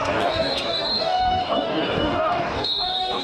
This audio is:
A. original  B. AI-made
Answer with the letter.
B